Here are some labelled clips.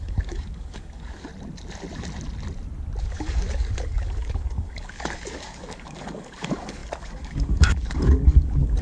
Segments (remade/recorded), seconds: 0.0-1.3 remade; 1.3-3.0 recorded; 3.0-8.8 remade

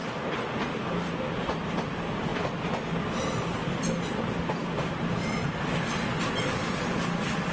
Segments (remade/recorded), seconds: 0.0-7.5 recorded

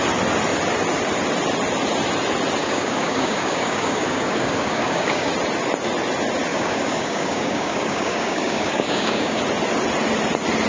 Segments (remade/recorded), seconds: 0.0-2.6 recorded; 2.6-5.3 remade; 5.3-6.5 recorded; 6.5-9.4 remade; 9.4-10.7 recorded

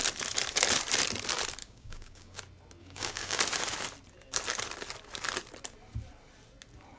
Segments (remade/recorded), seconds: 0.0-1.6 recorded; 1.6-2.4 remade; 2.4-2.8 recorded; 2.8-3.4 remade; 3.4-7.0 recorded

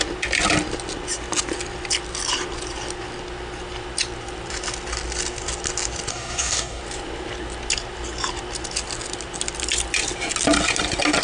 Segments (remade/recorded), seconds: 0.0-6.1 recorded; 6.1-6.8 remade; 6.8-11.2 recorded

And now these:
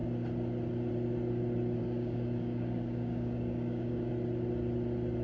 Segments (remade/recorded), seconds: 0.0-1.8 recorded; 1.8-4.1 remade; 4.1-5.2 recorded